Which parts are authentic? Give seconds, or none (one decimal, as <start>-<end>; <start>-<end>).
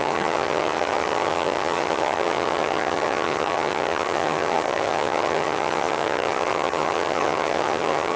none